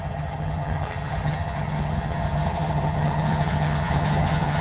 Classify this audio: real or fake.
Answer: fake